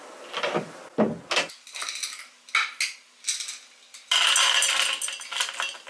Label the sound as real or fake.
real